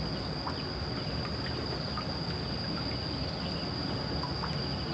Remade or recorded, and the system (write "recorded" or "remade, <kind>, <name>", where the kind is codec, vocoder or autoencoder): recorded